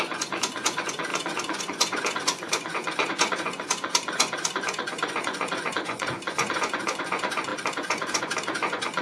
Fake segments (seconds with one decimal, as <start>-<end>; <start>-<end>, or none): 0.0-9.0

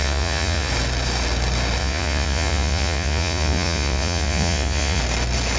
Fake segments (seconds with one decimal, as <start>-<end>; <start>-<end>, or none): 0.0-0.7; 1.8-5.0

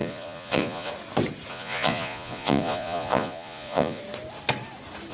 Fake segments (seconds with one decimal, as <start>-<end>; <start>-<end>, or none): 0.0-0.9; 1.5-4.0

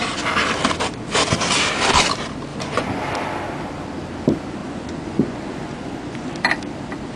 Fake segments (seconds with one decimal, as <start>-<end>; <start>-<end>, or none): 2.5-3.0; 4.6-6.3

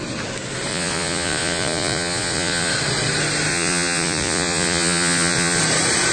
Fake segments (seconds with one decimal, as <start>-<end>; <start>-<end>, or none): 0.7-2.7; 3.5-5.6

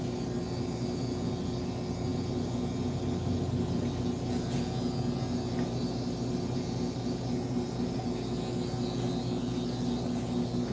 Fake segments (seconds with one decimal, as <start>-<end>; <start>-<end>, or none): none

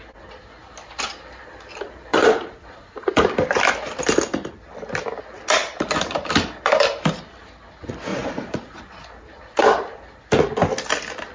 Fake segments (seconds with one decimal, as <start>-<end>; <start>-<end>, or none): 2.1-3.2; 8.1-8.8